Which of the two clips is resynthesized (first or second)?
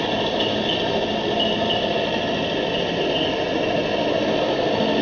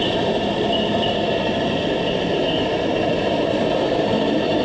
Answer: second